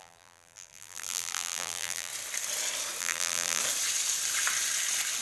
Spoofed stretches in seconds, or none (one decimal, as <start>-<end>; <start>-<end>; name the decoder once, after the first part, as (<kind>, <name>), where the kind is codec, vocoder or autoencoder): 0.0-2.1 (vocoder, BigVGAN v2); 3.0-3.6